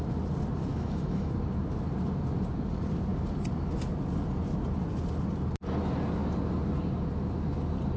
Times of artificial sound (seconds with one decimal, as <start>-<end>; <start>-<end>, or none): 0.7-1.3